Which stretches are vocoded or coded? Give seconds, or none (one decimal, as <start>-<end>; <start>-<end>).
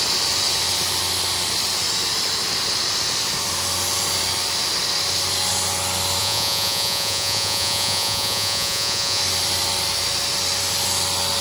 6.2-9.2